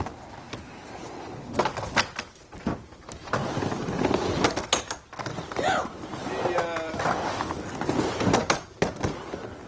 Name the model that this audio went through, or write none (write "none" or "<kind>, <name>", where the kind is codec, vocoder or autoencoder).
none